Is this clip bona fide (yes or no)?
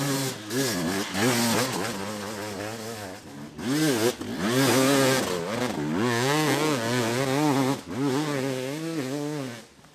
yes